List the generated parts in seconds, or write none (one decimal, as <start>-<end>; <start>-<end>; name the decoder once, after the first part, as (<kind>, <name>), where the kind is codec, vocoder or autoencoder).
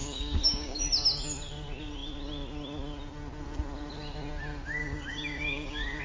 0.0-0.8 (codec, DAC); 4.8-6.0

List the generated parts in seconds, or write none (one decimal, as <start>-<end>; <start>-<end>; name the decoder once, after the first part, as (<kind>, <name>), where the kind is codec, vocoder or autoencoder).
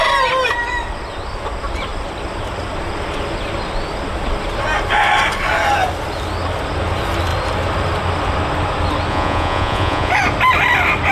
9.1-10.1 (vocoder, Vocos)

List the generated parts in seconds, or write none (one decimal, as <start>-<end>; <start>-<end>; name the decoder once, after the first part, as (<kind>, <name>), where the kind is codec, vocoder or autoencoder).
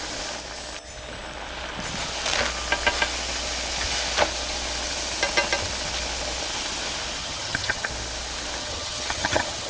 7.2-7.9 (vocoder, HiFi-GAN); 8.6-9.7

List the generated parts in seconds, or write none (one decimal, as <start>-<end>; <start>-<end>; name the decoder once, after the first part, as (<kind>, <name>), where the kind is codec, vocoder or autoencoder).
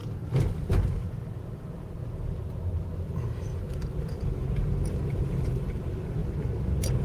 none